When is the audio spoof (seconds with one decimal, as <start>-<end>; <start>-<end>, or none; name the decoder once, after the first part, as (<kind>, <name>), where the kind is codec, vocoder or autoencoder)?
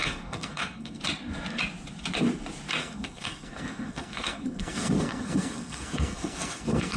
0.0-1.0 (codec, SNAC); 2.8-7.0